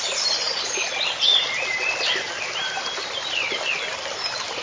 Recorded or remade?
recorded